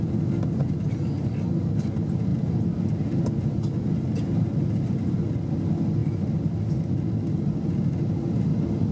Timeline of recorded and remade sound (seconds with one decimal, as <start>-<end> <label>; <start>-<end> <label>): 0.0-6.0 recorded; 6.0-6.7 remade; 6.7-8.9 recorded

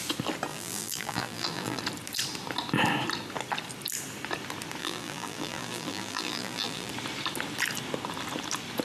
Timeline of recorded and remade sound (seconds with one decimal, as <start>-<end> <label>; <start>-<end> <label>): 0.0-0.5 recorded; 0.5-1.8 remade; 1.8-4.8 recorded; 4.8-6.9 remade; 6.9-8.8 recorded

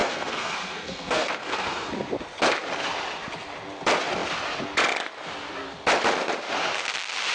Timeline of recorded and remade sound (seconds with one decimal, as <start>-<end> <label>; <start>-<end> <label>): 0.0-1.9 remade; 1.9-7.3 recorded

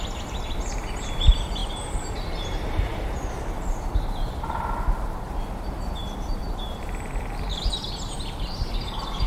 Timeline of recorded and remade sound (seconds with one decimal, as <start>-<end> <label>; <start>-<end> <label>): 0.0-9.3 remade

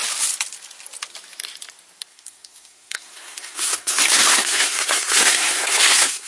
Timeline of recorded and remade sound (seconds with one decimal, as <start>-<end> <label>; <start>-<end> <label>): 0.0-2.1 recorded; 2.1-6.3 remade

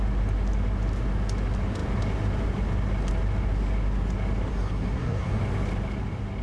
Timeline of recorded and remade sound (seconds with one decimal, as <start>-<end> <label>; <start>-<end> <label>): 0.0-4.5 recorded; 4.5-5.4 remade; 5.4-6.4 recorded

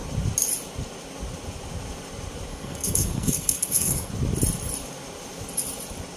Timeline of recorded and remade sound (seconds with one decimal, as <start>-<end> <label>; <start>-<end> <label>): 0.0-2.5 recorded; 2.5-4.1 remade; 4.1-6.2 recorded

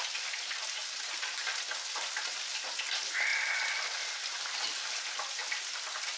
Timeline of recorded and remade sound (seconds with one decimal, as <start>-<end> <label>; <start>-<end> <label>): 0.0-6.2 recorded